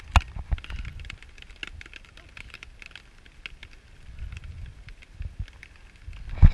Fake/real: real